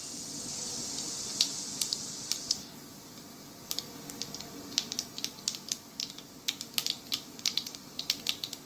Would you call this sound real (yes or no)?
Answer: yes